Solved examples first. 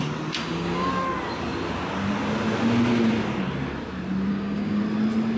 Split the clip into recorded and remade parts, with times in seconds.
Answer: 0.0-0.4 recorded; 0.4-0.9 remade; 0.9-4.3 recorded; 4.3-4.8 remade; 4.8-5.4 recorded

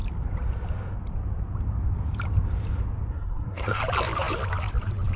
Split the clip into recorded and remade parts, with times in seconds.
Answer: 0.0-3.1 recorded; 3.1-3.8 remade; 3.8-5.2 recorded

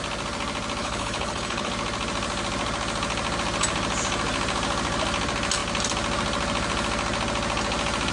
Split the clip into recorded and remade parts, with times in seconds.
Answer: 0.0-0.8 recorded; 0.8-1.7 remade; 1.7-8.1 recorded